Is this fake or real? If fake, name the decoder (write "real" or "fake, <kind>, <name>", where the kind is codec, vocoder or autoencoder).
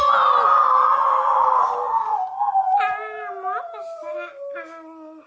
real